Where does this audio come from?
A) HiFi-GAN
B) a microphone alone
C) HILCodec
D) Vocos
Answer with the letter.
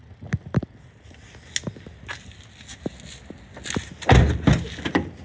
B